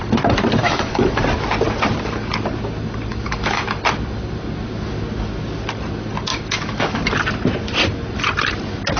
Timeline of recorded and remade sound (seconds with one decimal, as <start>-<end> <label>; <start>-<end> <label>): 0.0-0.6 recorded; 0.6-1.2 remade; 1.2-3.1 recorded; 3.1-3.8 remade; 3.8-6.3 recorded; 6.3-7.0 remade; 7.0-9.0 recorded